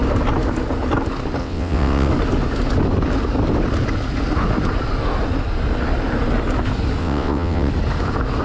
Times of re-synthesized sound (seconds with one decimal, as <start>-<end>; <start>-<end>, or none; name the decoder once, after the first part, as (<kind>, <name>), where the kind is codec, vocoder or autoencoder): 1.4-2.1 (vocoder, WaveNeXt); 7.0-7.7